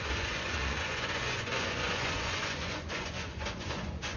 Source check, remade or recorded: remade